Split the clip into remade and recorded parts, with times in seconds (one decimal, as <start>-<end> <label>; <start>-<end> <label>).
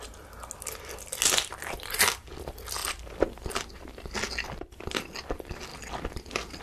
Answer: 0.0-2.8 recorded; 2.8-5.3 remade; 5.3-5.7 recorded; 5.7-6.6 remade